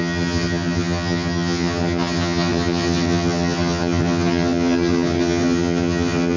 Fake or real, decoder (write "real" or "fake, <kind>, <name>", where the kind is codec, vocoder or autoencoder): fake, vocoder, HiFi-GAN